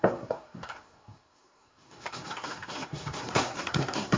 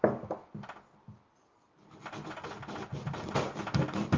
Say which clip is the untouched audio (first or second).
second